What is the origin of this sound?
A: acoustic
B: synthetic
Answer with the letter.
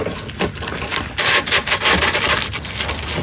A